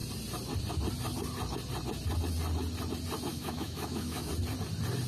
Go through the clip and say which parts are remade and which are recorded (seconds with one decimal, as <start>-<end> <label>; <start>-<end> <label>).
0.0-3.3 recorded; 3.3-4.3 remade; 4.3-5.1 recorded